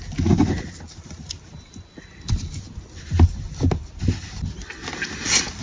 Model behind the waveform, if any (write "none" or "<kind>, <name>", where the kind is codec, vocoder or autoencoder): none